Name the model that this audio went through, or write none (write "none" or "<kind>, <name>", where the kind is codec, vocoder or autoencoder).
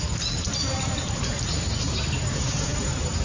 vocoder, BigVGAN v2